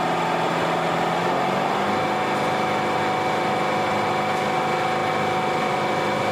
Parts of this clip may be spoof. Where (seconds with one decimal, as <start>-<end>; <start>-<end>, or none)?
none